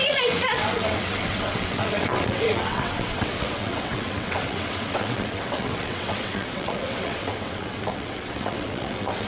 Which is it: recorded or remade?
remade